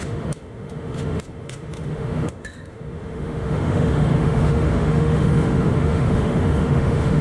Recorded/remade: remade